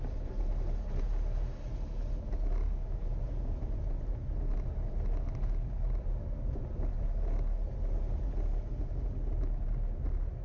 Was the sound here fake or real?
real